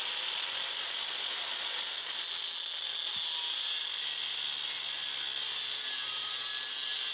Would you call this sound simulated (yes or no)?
no